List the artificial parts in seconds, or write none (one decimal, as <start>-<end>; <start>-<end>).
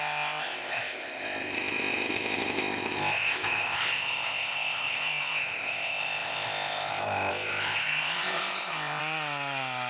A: 0.0-9.0